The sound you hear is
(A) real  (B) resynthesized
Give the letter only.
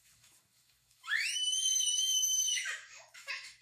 B